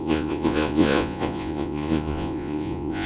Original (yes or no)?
no